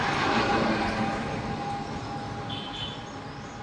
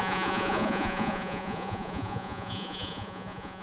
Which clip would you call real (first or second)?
first